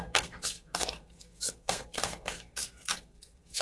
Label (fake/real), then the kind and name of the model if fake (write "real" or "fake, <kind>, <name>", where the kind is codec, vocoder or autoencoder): fake, codec, SNAC